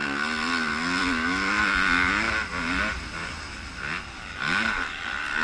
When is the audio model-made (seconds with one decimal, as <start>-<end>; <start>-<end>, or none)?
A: none